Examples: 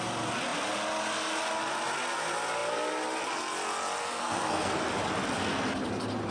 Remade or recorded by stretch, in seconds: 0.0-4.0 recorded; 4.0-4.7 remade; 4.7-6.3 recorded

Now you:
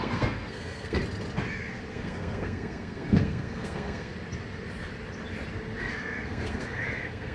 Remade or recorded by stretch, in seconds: 0.0-1.0 remade; 1.0-1.9 recorded; 1.9-4.1 remade; 4.1-5.8 recorded; 5.8-7.3 remade

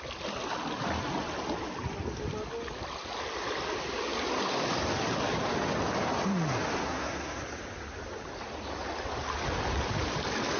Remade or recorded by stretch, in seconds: 0.0-6.8 recorded; 6.8-7.4 remade; 7.4-10.6 recorded

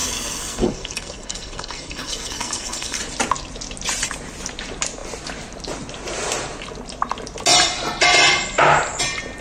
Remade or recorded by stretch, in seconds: 0.0-3.0 remade; 3.0-9.4 recorded

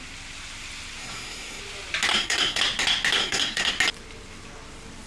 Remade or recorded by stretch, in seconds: 0.0-1.0 recorded; 1.0-1.6 remade; 1.6-2.1 recorded; 2.1-2.6 remade; 2.6-3.2 recorded; 3.2-3.7 remade; 3.7-5.1 recorded

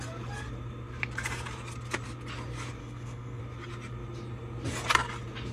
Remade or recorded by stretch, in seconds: 0.0-2.8 recorded; 2.8-3.4 remade; 3.4-5.5 recorded

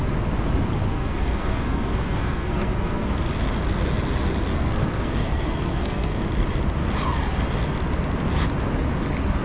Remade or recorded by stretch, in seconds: 0.0-0.9 recorded; 0.9-3.1 remade; 3.1-4.5 recorded; 4.5-6.2 remade; 6.2-9.4 recorded